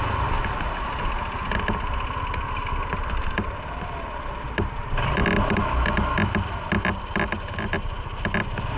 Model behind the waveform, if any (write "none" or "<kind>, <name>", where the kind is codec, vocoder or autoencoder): none